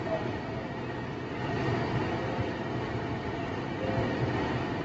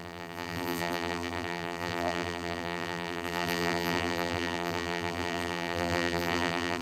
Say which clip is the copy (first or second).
second